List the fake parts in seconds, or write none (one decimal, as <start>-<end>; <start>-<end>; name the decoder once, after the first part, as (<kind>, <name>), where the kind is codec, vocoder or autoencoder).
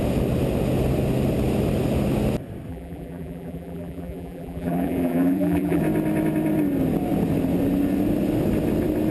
2.7-5.8 (vocoder, BigVGAN v2)